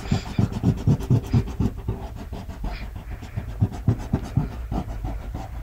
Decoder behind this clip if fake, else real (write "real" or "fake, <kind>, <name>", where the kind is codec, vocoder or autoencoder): real